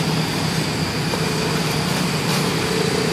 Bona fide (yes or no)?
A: yes